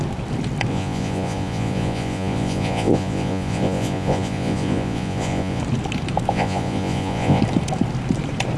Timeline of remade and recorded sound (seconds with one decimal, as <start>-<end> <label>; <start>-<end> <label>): 0.0-0.7 recorded; 0.7-5.6 remade; 5.6-6.3 recorded; 6.3-7.4 remade; 7.4-8.6 recorded